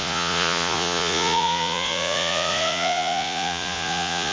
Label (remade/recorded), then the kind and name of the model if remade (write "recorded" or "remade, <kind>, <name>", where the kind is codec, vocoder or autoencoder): remade, vocoder, Vocos